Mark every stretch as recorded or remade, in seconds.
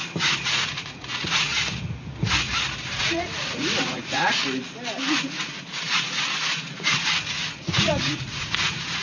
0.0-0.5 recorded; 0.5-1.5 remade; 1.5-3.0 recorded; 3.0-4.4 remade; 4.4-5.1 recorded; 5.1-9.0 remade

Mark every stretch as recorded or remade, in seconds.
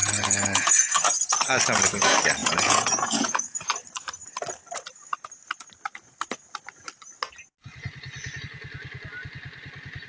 0.0-1.5 remade; 1.5-2.4 recorded; 2.4-3.6 remade; 3.6-10.1 recorded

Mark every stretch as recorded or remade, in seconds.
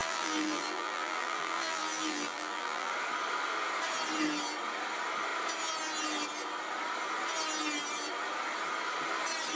0.0-2.9 remade; 2.9-9.5 recorded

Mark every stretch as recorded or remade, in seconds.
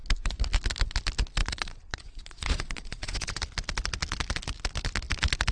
0.0-1.4 recorded; 1.4-3.4 remade; 3.4-5.5 recorded